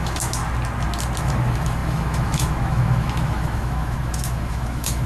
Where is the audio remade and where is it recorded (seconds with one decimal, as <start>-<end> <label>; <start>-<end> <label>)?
0.0-0.4 remade; 0.4-1.2 recorded; 1.2-5.1 remade